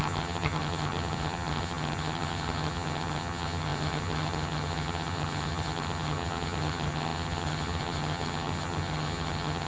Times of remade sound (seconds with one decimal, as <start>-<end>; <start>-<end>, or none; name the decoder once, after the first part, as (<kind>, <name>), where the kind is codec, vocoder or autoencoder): 0.0-9.7 (vocoder, HiFi-GAN)

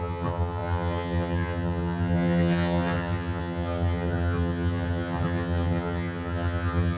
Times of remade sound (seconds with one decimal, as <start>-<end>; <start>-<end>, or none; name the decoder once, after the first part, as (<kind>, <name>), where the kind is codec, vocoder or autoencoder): 0.0-7.0 (vocoder, HiFi-GAN)

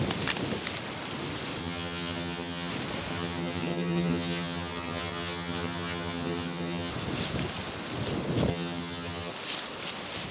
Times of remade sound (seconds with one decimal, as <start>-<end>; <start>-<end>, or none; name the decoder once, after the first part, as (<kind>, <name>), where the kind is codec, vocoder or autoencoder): 1.6-2.7 (vocoder, HiFi-GAN); 3.1-6.9; 8.5-9.3

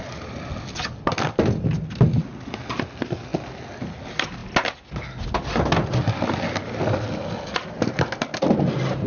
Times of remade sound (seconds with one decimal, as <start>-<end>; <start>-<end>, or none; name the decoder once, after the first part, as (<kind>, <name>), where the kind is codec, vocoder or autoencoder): none

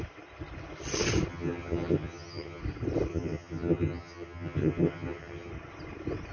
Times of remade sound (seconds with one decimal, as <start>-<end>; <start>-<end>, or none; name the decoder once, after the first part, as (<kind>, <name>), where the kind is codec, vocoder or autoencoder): 1.3-2.6 (vocoder, HiFi-GAN); 3.1-5.5

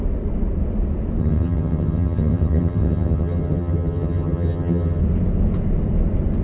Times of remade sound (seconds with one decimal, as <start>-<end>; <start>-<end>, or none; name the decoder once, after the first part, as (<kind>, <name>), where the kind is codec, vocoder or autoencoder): 1.2-5.0 (vocoder, HiFi-GAN)

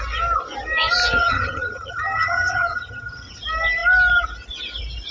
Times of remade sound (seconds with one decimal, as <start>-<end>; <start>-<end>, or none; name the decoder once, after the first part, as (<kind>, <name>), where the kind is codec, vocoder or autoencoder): 1.2-3.4 (vocoder, HiFi-GAN)